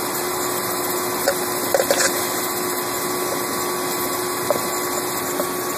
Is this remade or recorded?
remade